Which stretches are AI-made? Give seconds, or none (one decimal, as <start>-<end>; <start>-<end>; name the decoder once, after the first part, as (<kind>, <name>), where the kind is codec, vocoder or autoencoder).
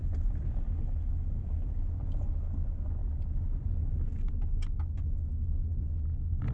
none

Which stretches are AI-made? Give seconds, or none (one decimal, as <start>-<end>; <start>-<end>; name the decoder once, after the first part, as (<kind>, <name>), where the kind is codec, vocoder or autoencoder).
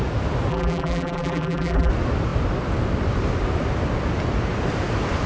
0.5-1.9 (vocoder, BigVGAN v2)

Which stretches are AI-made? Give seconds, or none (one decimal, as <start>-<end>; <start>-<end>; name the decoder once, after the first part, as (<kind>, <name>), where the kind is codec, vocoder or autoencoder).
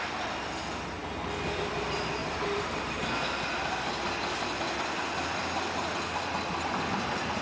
2.2-3.0 (vocoder, BigVGAN v2)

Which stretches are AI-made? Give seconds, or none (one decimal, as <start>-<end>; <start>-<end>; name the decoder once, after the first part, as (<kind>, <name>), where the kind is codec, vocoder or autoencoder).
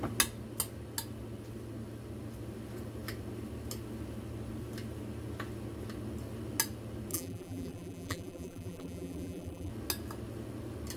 7.1-9.7 (vocoder, BigVGAN v2)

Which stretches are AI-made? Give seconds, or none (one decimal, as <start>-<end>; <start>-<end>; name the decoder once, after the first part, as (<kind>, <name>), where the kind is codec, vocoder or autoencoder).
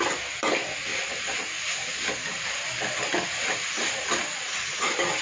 none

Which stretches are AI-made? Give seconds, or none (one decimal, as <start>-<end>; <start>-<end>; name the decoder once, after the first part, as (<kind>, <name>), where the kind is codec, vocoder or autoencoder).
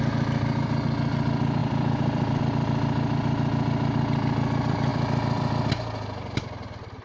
1.6-2.4 (vocoder, BigVGAN v2); 4.9-5.7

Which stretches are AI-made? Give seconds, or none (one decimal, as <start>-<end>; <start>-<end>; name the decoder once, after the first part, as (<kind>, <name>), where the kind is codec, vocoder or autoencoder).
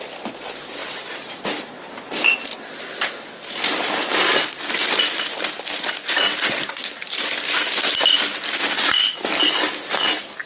0.8-1.4 (vocoder, BigVGAN v2)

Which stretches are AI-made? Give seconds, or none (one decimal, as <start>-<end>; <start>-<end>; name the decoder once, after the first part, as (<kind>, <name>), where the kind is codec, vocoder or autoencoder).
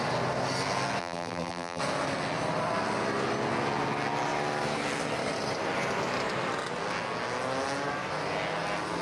1.0-1.8 (vocoder, BigVGAN v2)